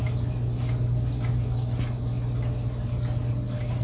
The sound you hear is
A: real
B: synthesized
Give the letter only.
A